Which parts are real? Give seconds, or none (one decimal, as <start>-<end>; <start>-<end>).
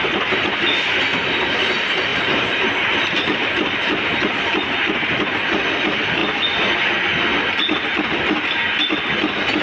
0.0-2.1; 2.9-9.6